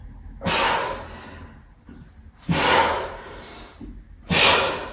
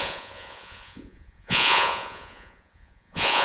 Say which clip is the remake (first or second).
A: second